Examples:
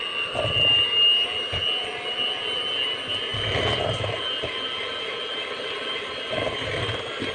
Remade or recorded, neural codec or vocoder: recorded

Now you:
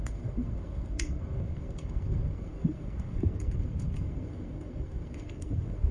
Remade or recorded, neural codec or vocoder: remade, codec, SNAC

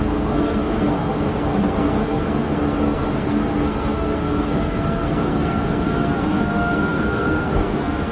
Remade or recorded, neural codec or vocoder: remade, codec, SNAC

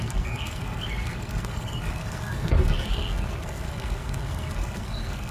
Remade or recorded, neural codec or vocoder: remade, codec, SNAC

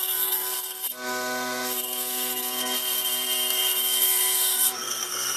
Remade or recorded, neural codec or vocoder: remade, codec, SNAC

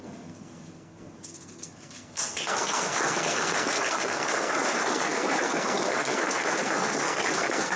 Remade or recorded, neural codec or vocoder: remade, codec, SNAC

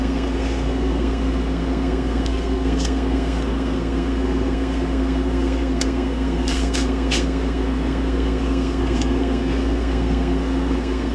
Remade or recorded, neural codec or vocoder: remade, codec, SNAC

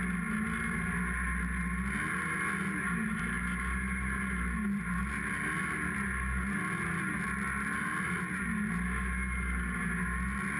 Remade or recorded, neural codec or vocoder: recorded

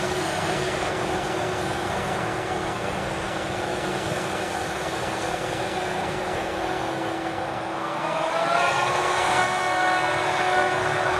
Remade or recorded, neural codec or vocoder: remade, codec, SNAC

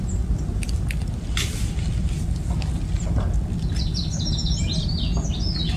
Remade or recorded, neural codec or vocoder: recorded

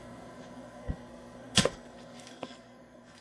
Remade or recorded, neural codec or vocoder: remade, codec, SNAC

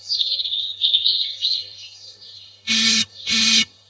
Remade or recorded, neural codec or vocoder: remade, codec, SNAC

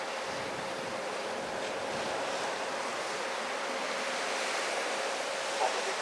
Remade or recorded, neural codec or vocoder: recorded